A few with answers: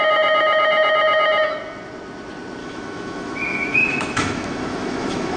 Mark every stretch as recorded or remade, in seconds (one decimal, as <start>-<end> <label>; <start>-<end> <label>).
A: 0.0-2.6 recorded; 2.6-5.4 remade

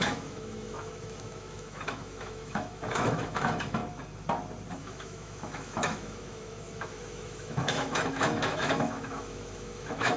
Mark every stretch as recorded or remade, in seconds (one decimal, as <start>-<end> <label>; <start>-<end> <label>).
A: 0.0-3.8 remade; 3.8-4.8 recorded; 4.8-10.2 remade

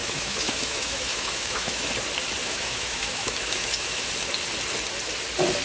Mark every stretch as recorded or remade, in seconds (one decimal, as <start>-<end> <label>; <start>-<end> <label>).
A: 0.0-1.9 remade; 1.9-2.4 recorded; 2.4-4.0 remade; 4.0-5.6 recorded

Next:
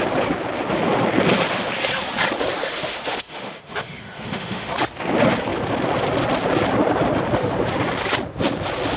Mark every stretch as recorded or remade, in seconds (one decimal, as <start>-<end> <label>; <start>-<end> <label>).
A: 0.0-2.6 recorded; 2.6-4.7 remade; 4.7-9.0 recorded